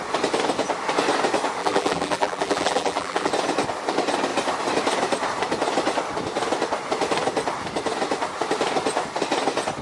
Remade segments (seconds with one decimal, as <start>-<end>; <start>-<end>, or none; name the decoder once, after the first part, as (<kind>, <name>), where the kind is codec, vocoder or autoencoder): 1.6-3.3 (vocoder, BigVGAN v2)